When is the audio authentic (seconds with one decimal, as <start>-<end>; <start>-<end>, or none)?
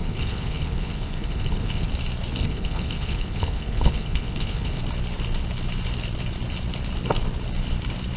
1.9-2.4; 4.8-8.2